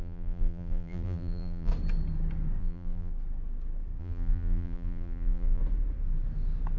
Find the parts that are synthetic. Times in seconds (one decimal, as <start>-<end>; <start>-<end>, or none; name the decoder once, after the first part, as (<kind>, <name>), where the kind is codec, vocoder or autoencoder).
0.0-1.7 (vocoder, BigVGAN v2); 2.6-3.1; 4.0-5.6